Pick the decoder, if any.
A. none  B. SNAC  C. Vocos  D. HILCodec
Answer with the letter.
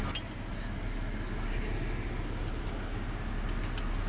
A